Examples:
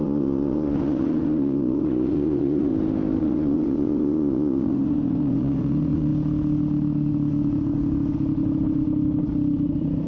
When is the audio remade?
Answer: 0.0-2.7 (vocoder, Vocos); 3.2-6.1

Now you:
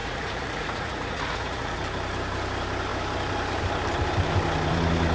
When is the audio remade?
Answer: 0.0-1.8 (vocoder, Vocos)

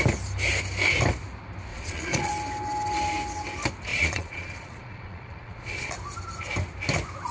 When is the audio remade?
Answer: 1.7-2.3 (vocoder, Vocos); 3.9-5.9

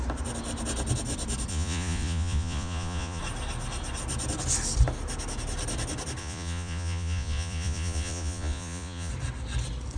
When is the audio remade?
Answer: 1.5-3.2 (vocoder, Vocos); 6.2-9.1

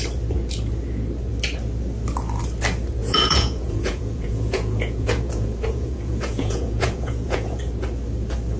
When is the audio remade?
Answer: 3.0-7.6 (vocoder, Vocos)

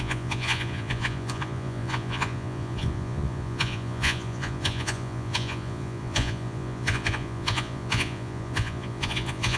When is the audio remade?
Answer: 0.0-9.6 (vocoder, Vocos)

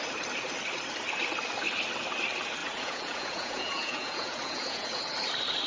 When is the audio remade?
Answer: 2.6-5.0 (vocoder, Vocos)